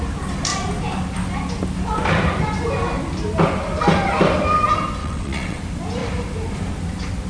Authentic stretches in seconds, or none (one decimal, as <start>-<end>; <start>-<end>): 0.0-5.0; 5.6-7.3